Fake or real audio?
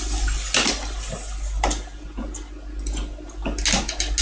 real